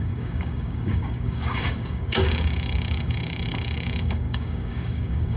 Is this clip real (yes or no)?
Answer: no